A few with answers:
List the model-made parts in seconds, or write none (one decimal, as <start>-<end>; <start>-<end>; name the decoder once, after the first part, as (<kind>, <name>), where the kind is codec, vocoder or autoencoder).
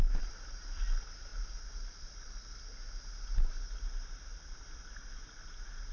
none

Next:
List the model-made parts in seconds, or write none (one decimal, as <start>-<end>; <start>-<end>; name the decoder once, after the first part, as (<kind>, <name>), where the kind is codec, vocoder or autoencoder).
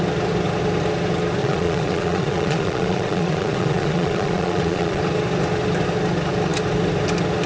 1.4-5.0 (vocoder, Vocos)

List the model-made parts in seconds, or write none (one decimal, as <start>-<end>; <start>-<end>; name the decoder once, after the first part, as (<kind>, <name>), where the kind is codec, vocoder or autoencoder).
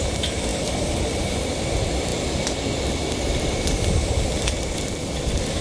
none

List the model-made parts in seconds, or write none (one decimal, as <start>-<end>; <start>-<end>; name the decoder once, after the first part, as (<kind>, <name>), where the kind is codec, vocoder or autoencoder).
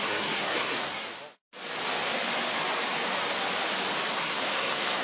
0.0-1.1 (codec, SNAC); 4.1-5.0